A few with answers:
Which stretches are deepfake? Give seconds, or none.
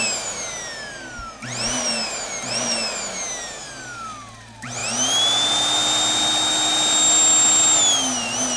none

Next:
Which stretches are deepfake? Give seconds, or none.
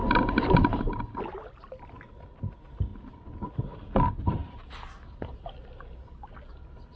0.0-1.2 (vocoder, BigVGAN v2)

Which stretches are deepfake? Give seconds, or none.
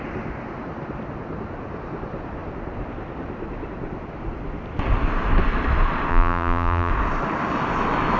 6.1-6.9 (vocoder, BigVGAN v2)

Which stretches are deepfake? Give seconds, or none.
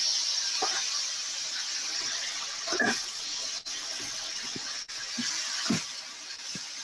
1.9-5.1 (vocoder, WaveNeXt)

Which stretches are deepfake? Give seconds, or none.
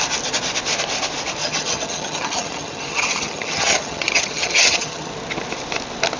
1.4-5.1 (vocoder, HiFi-GAN)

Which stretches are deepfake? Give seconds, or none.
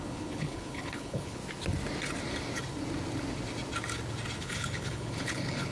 0.0-1.4 (codec, HILCodec); 4.4-5.7